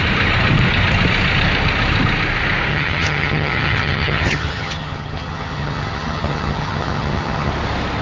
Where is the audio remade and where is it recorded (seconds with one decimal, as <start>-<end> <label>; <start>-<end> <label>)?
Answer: 0.0-2.7 recorded; 2.7-7.5 remade; 7.5-8.0 recorded